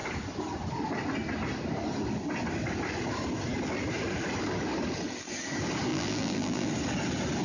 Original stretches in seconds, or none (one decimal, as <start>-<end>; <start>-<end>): 0.0-5.9; 6.7-7.4